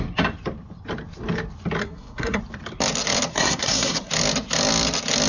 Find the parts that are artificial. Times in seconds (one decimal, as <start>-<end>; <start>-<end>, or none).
1.8-2.4; 3.3-4.1